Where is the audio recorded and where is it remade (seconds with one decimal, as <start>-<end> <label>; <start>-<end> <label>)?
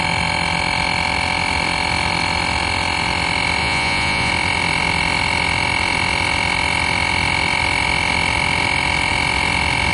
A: 0.0-3.6 recorded; 3.6-4.3 remade; 4.3-9.9 recorded